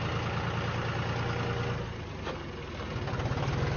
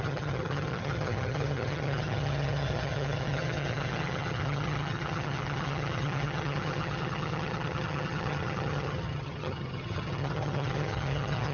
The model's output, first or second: second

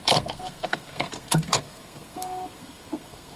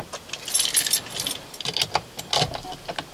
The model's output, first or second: first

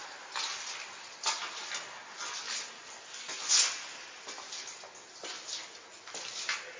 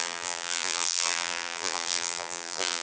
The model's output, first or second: second